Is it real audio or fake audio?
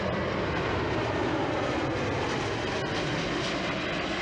real